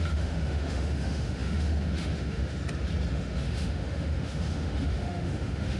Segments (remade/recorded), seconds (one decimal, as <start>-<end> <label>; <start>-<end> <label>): 0.0-2.6 remade; 2.6-3.1 recorded; 3.1-5.8 remade